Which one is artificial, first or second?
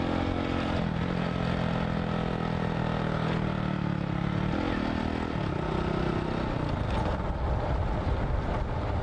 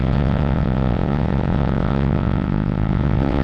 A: second